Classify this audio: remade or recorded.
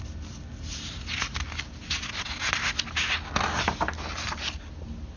recorded